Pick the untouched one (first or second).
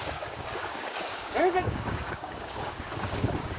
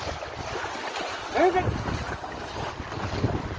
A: second